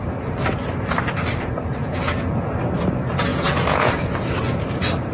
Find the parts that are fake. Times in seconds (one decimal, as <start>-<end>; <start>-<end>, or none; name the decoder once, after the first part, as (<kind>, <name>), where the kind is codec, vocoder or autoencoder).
1.8-2.5 (vocoder, Vocos); 3.3-4.1

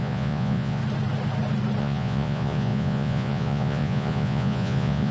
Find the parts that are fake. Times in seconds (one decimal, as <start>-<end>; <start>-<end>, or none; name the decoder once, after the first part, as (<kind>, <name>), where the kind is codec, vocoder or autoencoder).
0.0-0.8 (vocoder, Vocos); 1.8-5.1

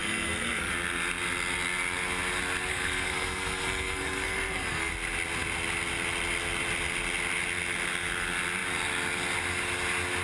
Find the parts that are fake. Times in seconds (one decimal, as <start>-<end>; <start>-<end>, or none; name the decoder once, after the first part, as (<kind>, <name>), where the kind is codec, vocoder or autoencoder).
0.0-0.7 (codec, SNAC); 2.7-4.9

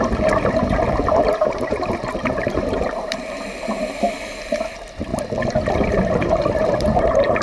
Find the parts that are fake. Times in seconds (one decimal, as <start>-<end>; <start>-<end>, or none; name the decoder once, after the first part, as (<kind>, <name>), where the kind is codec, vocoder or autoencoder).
0.0-5.1 (vocoder, BigVGAN v2); 5.6-7.4

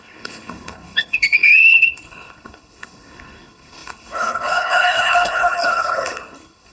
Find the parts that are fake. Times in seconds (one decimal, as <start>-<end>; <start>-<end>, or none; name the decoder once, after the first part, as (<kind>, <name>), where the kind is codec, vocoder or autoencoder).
0.0-6.7 (codec, HILCodec)

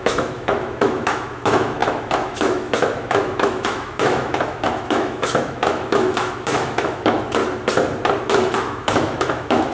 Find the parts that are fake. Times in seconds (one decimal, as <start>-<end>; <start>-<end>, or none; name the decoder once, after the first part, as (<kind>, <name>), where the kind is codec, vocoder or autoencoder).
0.0-7.4 (autoencoder, DAC-VAE); 8.2-9.7

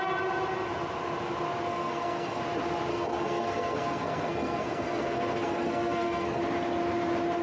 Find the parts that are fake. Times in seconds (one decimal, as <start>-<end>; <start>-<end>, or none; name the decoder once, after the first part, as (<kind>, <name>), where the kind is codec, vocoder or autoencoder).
1.7-2.4 (codec, SNAC); 2.9-6.4